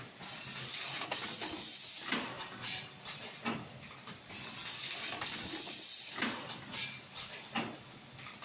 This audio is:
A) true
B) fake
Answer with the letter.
A